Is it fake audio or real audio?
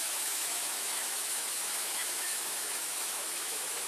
fake